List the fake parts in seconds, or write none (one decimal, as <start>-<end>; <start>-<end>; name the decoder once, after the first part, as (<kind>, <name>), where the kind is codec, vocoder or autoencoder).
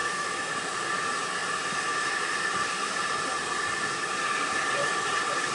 0.0-0.5 (autoencoder, DAC-VAE)